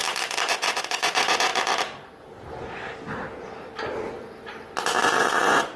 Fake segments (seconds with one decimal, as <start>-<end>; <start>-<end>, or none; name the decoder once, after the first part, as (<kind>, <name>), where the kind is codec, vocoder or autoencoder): 0.5-1.5 (vocoder, Vocos); 5.0-5.8